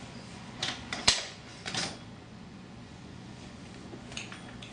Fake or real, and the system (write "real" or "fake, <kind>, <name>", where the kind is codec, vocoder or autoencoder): fake, vocoder, Vocos